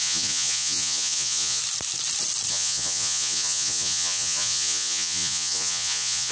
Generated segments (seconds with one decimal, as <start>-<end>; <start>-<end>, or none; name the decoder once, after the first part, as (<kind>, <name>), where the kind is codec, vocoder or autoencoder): 0.0-1.6 (vocoder, Vocos); 2.5-6.3